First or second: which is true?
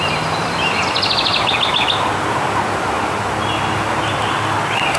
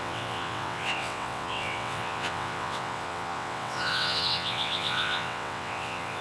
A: first